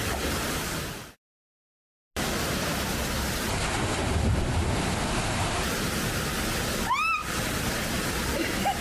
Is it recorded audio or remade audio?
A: recorded